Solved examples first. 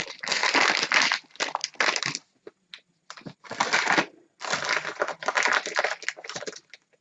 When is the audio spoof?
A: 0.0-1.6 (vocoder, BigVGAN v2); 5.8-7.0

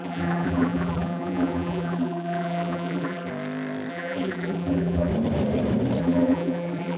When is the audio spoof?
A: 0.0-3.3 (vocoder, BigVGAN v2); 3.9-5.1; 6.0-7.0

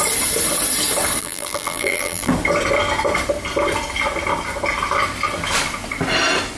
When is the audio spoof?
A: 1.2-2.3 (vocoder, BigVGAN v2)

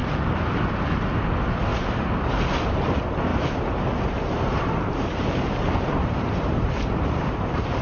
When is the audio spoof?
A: 0.0-0.8 (vocoder, BigVGAN v2); 1.7-2.4; 3.3-7.8